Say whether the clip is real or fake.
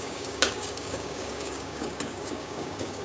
fake